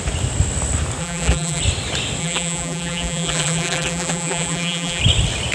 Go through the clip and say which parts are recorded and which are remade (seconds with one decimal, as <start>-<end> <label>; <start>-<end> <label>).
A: 0.0-1.0 recorded; 1.0-1.6 remade; 1.6-2.2 recorded; 2.2-5.0 remade; 5.0-5.5 recorded